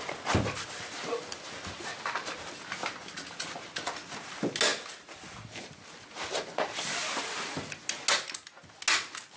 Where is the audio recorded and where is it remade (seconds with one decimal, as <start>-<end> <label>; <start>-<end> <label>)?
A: 0.0-9.4 recorded